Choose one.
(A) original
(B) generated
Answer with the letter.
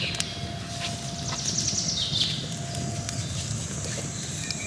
A